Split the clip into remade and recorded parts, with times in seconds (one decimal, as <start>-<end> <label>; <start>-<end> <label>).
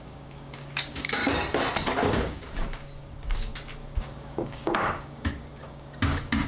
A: 0.0-1.2 remade; 1.2-1.8 recorded; 1.8-3.5 remade; 3.5-4.0 recorded; 4.0-6.5 remade